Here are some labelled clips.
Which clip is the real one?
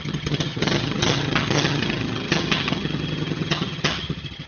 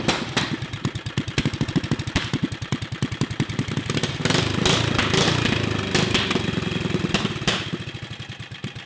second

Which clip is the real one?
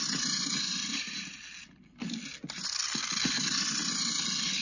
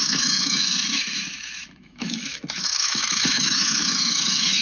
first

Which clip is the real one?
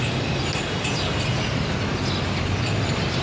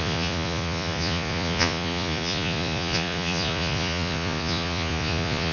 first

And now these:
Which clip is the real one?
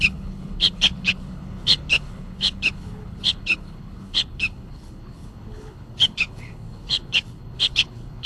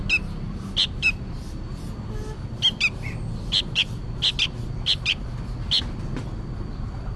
second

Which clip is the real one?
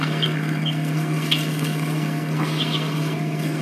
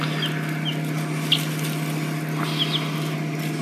second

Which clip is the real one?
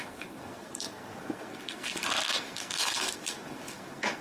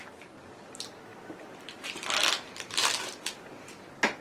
second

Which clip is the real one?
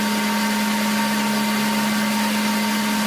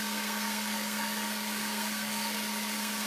first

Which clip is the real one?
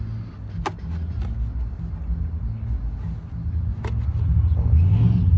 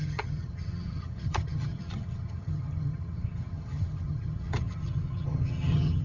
first